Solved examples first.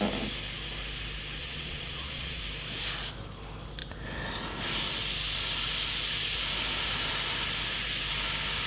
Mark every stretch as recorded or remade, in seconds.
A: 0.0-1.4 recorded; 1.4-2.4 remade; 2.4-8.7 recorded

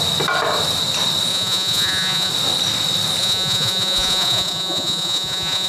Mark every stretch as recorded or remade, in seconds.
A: 0.0-1.3 recorded; 1.3-2.3 remade; 2.3-3.2 recorded; 3.2-5.7 remade

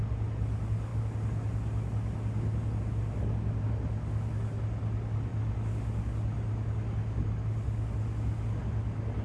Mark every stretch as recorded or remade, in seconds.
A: 0.0-9.2 recorded

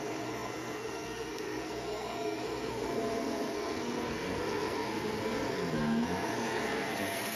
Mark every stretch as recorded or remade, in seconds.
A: 0.0-7.4 remade

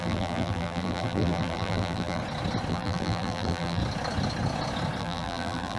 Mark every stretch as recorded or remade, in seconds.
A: 0.0-2.2 remade; 2.2-2.7 recorded; 2.7-3.8 remade; 3.8-5.0 recorded; 5.0-5.8 remade